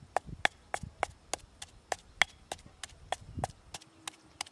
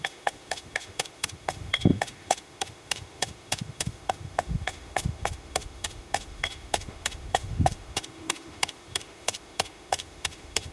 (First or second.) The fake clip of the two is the second